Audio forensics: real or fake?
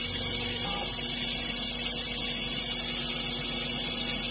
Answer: real